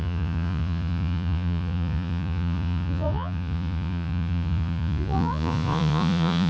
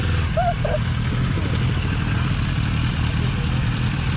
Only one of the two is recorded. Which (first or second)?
second